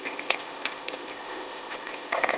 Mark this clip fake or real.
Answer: fake